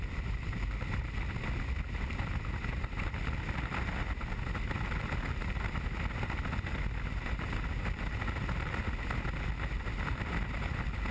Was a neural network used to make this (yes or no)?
no